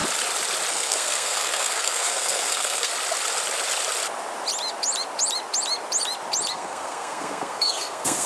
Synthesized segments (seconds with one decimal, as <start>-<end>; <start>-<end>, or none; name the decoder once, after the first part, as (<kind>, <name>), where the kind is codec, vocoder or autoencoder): 0.7-2.9 (codec, SNAC); 6.5-8.3